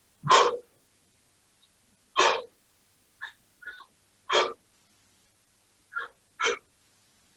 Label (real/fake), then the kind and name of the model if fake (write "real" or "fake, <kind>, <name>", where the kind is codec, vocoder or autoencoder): real